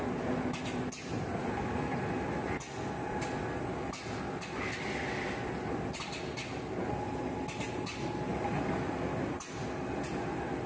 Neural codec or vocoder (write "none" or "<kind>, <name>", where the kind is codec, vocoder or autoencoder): none